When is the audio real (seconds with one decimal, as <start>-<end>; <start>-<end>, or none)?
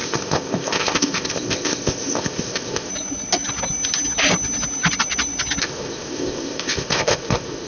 2.9-5.6